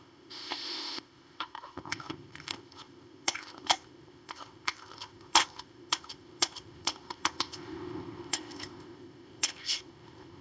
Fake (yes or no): yes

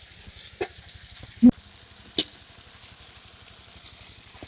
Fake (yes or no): no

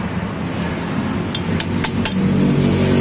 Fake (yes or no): no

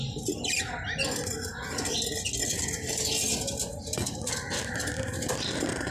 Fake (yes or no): no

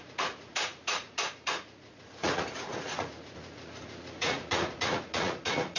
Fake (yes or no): yes